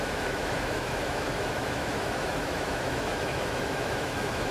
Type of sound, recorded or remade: remade